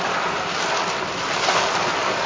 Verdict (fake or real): real